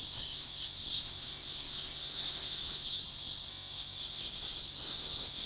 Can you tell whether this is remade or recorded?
remade